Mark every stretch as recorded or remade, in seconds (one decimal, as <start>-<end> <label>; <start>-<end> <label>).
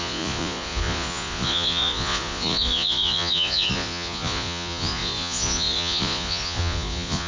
0.0-7.3 remade